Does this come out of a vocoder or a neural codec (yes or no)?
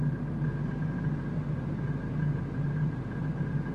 no